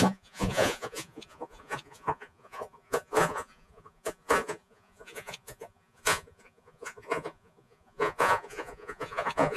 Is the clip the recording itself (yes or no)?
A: no